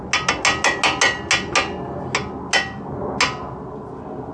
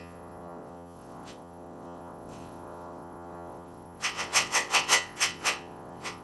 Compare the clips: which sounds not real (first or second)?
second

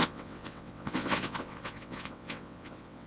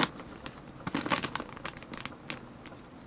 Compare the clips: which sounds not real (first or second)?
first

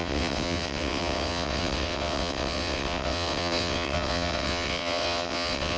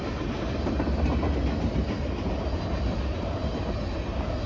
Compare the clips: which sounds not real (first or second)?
first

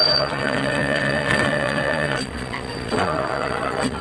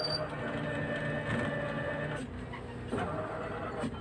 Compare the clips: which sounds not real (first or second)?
first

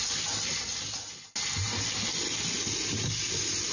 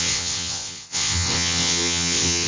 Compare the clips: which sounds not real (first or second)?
second